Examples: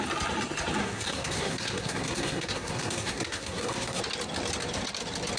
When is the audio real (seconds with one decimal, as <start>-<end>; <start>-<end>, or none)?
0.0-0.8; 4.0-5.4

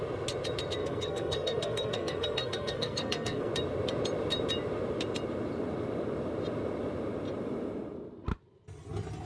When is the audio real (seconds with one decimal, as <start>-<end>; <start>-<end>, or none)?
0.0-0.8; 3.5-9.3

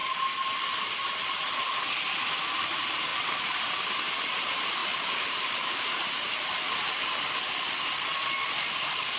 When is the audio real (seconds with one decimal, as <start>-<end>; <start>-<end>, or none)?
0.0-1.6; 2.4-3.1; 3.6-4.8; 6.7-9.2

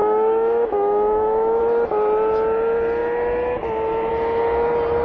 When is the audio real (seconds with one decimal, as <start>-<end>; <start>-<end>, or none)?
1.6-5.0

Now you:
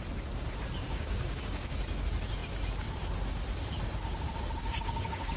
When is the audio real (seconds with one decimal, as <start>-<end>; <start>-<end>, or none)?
0.0-0.8; 1.8-4.6

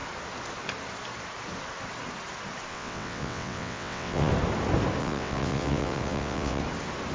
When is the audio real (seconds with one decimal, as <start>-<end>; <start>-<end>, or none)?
0.0-2.7; 4.3-5.0; 6.6-7.1

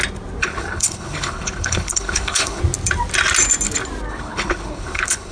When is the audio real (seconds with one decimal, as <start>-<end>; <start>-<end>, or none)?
0.0-0.4; 2.6-4.1

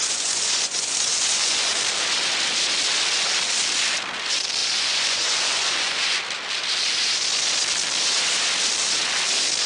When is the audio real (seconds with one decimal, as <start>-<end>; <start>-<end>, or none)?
1.7-4.6; 6.2-9.7